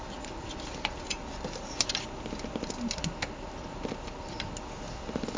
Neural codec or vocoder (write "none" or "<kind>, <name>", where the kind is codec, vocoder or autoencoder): none